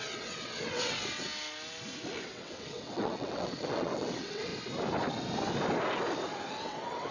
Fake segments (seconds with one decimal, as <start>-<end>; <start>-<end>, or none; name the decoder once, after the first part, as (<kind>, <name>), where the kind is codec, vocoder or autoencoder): 0.0-1.3 (vocoder, WaveNeXt); 2.2-4.5; 6.6-7.1